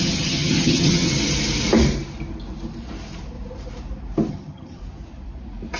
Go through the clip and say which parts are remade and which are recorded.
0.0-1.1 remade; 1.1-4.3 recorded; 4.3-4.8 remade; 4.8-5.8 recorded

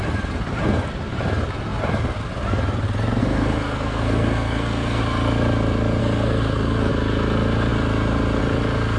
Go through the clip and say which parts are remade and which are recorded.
0.0-3.2 recorded; 3.2-5.0 remade; 5.0-6.0 recorded; 6.0-6.9 remade; 6.9-9.0 recorded